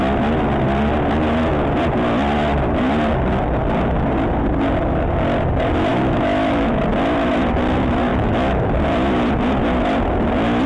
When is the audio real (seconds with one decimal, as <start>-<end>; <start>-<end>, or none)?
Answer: 0.0-5.9; 6.8-8.1; 8.7-10.7